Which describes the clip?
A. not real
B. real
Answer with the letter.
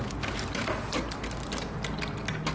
B